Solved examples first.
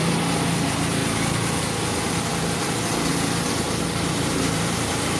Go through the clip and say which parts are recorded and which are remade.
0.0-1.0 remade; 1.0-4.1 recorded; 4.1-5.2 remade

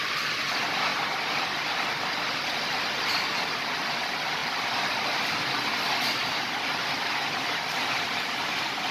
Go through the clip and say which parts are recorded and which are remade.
0.0-0.9 recorded; 0.9-1.7 remade; 1.7-4.4 recorded; 4.4-8.9 remade